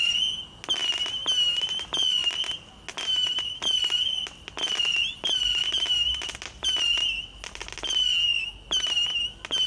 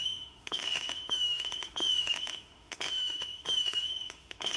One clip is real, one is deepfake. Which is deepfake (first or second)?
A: second